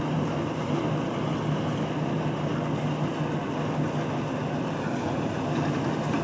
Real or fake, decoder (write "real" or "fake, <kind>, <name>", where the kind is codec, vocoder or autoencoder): real